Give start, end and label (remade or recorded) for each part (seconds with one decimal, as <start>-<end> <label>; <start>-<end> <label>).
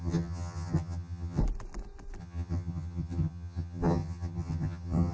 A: 0.0-1.4 remade; 1.4-2.2 recorded; 2.2-5.1 remade